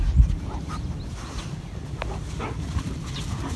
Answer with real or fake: real